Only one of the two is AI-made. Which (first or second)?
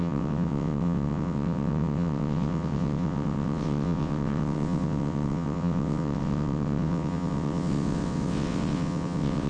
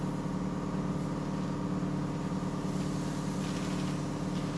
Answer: first